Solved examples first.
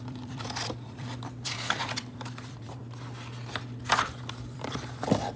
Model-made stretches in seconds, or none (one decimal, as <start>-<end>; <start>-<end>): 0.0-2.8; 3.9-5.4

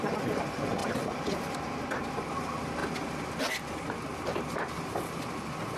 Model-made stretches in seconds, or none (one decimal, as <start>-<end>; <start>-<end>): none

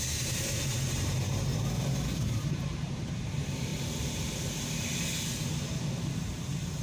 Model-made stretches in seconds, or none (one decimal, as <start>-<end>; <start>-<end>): 0.0-1.5; 2.2-3.7; 6.1-6.8

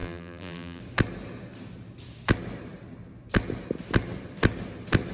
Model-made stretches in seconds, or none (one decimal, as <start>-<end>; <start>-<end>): 0.0-0.8

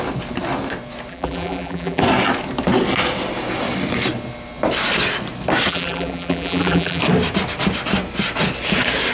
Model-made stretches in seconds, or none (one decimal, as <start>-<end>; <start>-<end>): 1.1-2.0; 5.7-7.0